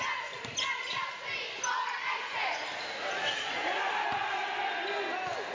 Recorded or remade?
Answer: recorded